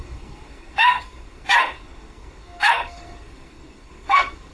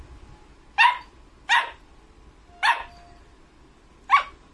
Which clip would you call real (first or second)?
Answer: second